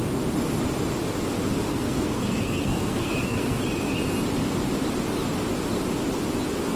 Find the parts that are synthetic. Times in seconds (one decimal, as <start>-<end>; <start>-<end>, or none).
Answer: 1.7-3.6